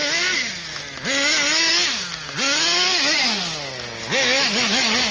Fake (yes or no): no